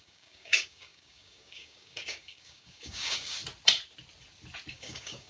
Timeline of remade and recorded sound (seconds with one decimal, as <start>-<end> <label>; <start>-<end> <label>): 0.0-3.4 remade; 3.4-4.7 recorded; 4.7-5.3 remade